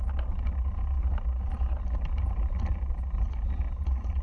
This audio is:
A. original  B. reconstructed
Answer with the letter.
A